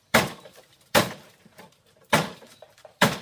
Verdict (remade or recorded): remade